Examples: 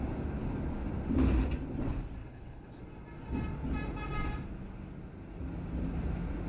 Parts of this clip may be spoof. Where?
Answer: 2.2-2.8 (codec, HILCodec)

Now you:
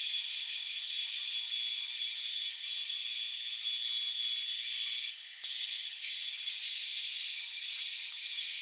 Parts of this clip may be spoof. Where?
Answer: 0.0-1.2 (vocoder, BigVGAN v2); 2.3-3.0; 5.1-8.6

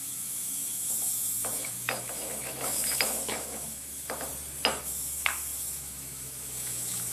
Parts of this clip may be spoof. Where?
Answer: 0.0-4.3 (autoencoder, DAC-VAE); 4.8-7.1

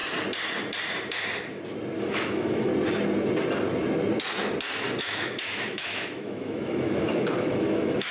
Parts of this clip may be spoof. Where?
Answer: 2.0-2.7 (autoencoder, DAC-VAE); 5.0-8.1

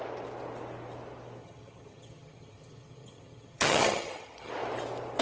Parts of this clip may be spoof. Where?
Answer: 1.4-4.5 (vocoder, HiFi-GAN)